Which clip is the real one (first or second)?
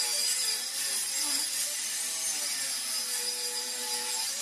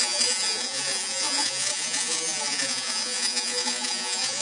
first